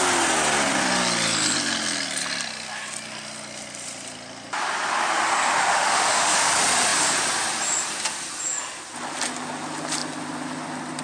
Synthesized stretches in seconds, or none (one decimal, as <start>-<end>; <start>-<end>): 5.6-6.5